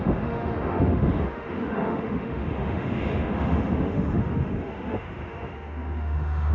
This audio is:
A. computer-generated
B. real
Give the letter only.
A